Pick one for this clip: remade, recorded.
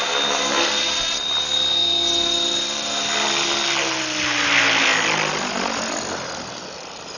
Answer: recorded